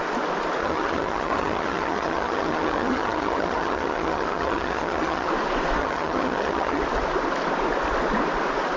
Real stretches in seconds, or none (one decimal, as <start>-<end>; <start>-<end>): 0.0-0.6; 5.3-5.8; 6.8-8.8